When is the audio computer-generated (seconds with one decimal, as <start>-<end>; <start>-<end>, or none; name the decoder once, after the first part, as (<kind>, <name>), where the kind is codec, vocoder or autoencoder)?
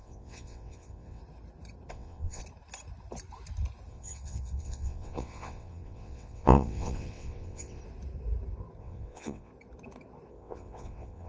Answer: 0.0-1.2 (vocoder, WaveNeXt); 1.9-2.4; 3.9-7.8; 8.8-9.5; 10.3-11.3